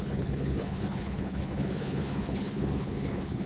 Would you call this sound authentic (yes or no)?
no